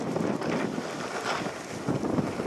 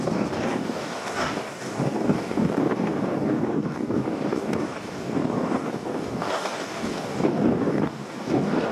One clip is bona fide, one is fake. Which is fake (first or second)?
second